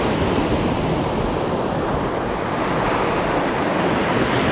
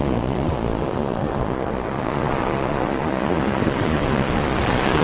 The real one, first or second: first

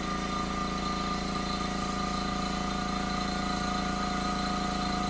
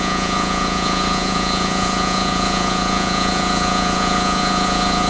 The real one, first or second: first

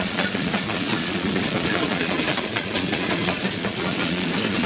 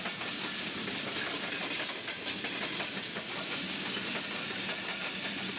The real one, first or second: second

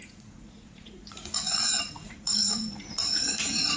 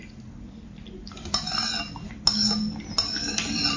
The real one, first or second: second